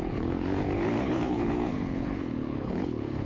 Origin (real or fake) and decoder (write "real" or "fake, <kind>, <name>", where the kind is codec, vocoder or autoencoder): fake, codec, HILCodec